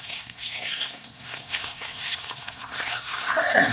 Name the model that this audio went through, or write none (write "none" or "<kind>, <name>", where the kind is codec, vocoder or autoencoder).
codec, SNAC